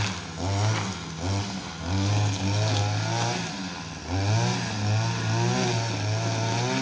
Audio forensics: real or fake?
real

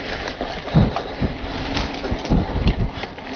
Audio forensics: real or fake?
real